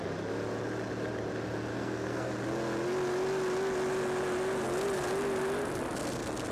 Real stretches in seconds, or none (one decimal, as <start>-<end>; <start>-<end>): 0.0-1.7; 2.3-6.5